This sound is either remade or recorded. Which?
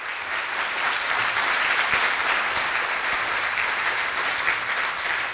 recorded